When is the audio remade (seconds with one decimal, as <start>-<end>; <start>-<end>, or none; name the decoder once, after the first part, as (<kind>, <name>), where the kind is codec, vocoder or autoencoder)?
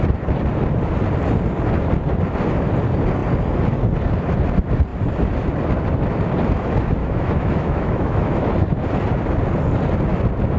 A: 7.0-8.5 (autoencoder, DAC-VAE)